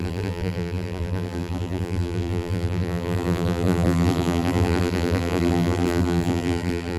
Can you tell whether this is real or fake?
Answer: fake